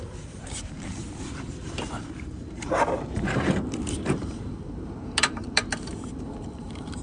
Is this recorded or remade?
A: remade